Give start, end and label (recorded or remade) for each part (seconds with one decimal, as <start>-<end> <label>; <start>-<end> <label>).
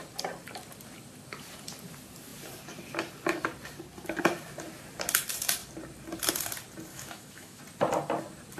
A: 0.0-6.9 recorded; 6.9-7.6 remade; 7.6-8.6 recorded